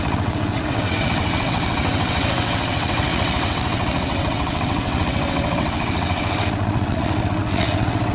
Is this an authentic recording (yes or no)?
no